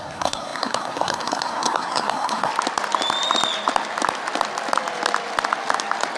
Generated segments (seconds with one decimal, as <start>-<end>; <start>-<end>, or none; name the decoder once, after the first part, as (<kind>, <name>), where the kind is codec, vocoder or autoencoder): 0.0-2.5 (codec, SNAC)